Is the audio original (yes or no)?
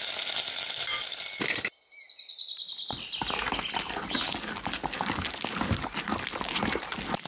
yes